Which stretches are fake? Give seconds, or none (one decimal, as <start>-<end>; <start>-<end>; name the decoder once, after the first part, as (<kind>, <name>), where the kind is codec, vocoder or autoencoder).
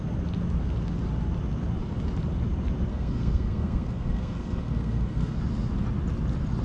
2.9-5.4 (codec, SNAC)